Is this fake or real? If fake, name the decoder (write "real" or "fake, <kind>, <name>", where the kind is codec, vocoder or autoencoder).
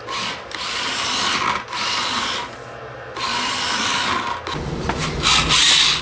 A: real